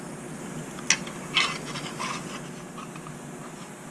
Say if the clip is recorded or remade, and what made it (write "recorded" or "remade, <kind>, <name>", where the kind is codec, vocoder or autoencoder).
recorded